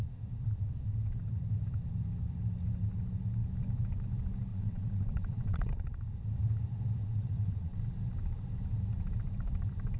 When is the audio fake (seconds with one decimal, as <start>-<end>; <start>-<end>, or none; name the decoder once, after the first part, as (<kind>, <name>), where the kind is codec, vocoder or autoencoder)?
4.5-5.7 (vocoder, WaveNeXt); 7.0-7.8